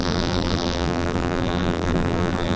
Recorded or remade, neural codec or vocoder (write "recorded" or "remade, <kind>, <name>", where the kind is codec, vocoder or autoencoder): remade, vocoder, BigVGAN v2